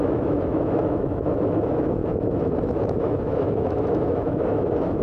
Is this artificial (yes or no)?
yes